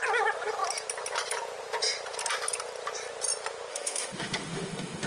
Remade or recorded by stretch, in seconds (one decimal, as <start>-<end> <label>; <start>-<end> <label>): 0.0-3.7 recorded; 3.7-5.1 remade